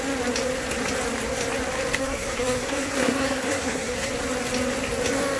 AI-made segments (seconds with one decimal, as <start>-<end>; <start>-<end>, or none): 2.0-4.1